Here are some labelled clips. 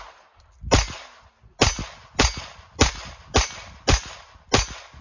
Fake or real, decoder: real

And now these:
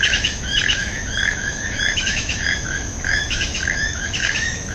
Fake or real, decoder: fake, autoencoder, DAC-VAE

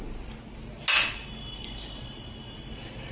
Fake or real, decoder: real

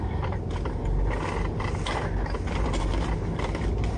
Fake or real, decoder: real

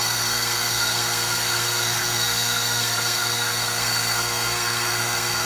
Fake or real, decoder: fake, codec, SNAC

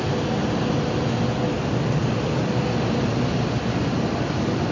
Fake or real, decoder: real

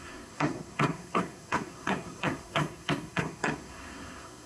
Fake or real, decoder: fake, codec, SNAC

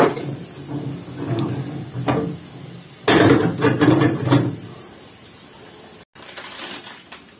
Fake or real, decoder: real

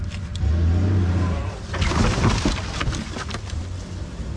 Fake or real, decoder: real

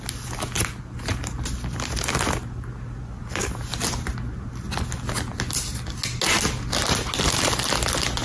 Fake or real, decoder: real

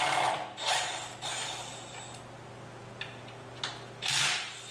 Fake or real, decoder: real